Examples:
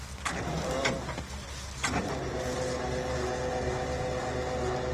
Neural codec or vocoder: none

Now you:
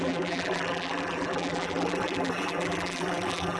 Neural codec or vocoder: vocoder, BigVGAN v2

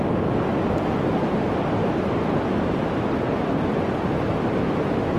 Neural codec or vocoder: none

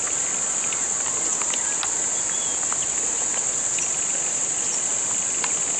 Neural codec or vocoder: none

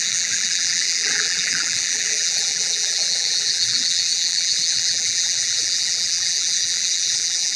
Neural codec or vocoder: vocoder, BigVGAN v2